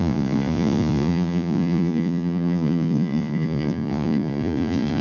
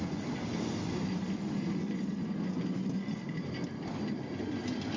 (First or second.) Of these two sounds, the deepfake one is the first